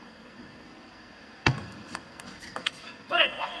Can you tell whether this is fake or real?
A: fake